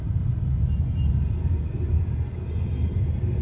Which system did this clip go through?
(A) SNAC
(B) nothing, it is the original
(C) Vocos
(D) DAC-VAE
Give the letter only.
B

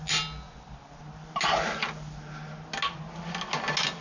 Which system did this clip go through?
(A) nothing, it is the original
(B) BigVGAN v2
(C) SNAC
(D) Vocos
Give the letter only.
A